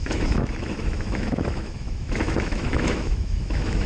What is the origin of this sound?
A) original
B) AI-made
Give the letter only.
B